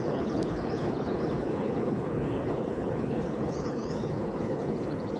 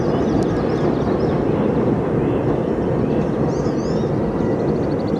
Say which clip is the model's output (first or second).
first